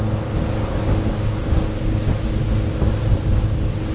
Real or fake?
real